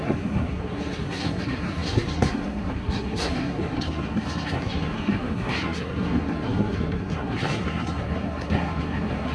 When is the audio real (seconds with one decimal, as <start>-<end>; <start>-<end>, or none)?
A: none